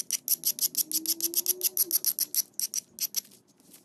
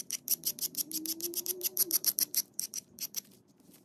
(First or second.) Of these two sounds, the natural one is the first